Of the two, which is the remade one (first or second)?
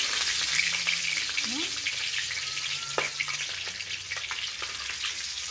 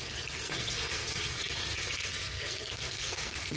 second